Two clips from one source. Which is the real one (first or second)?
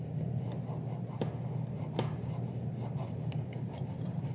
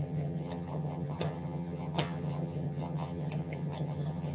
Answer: first